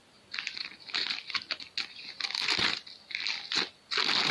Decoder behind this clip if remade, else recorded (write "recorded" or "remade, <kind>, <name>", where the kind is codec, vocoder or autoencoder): recorded